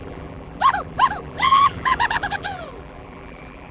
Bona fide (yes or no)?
no